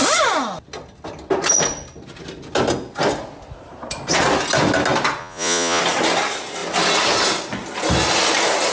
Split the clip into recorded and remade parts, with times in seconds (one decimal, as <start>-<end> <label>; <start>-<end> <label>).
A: 0.0-5.2 recorded; 5.2-5.8 remade; 5.8-8.7 recorded